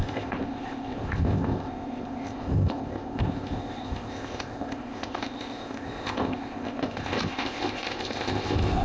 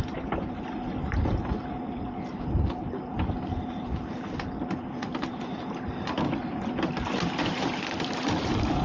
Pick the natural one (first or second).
second